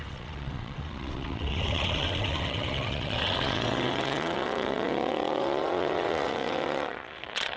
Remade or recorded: remade